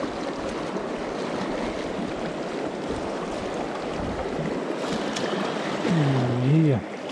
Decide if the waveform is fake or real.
real